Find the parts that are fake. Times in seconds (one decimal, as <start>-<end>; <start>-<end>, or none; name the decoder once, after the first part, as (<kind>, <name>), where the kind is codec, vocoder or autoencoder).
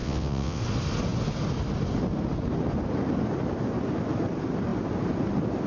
0.0-0.6 (vocoder, WaveNeXt)